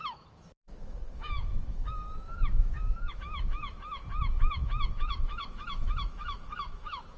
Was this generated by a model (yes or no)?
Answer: yes